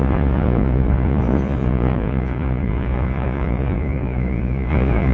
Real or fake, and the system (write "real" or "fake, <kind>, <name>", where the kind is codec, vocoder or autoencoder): fake, vocoder, Vocos